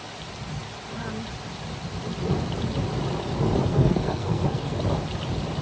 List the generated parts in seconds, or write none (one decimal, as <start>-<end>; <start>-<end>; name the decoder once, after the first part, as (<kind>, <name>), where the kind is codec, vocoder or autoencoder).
3.7-4.8 (codec, SNAC)